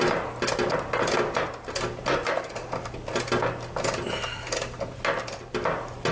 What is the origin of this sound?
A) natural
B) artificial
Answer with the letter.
A